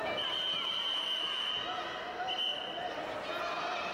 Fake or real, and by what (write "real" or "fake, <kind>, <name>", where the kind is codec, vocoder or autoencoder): real